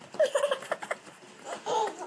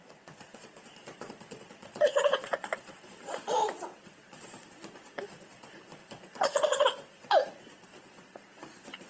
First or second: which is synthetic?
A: second